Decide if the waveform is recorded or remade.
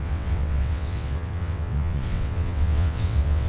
remade